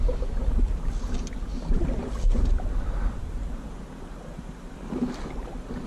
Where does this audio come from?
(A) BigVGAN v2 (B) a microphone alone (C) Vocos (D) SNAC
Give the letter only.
B